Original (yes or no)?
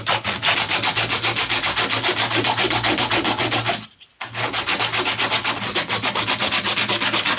yes